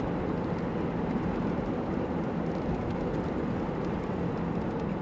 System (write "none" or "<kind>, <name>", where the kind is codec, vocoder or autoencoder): none